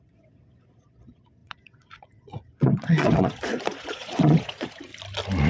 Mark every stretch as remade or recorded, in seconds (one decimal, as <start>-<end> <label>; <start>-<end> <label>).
0.0-4.9 remade; 4.9-5.5 recorded